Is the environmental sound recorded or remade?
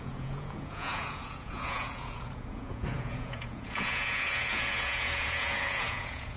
remade